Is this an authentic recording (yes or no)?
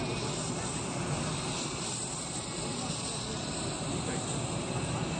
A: yes